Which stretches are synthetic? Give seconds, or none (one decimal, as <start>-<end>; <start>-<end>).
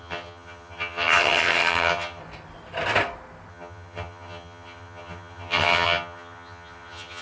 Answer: 0.0-2.2; 3.5-7.2